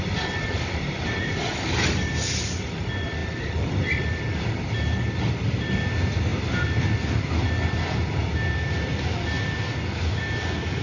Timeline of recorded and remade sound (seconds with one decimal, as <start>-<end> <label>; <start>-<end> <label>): 0.0-10.8 recorded